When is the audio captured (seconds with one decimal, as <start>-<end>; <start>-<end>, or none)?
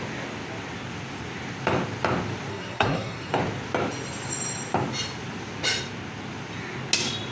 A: 0.0-2.5; 3.4-7.3